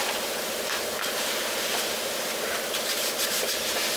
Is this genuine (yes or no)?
yes